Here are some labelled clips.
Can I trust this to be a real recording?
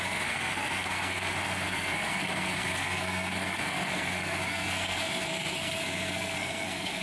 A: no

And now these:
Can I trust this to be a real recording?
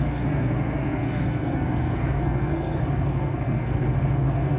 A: no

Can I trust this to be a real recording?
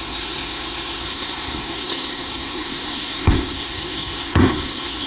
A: no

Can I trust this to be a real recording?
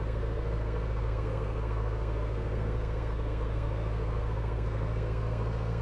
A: no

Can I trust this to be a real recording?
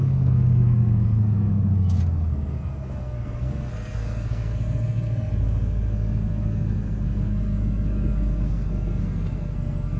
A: no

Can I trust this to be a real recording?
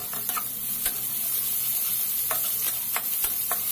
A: yes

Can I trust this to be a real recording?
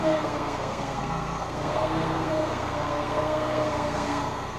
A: no